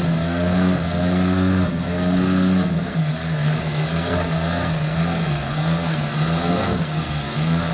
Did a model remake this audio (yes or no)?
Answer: yes